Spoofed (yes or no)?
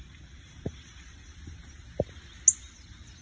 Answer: no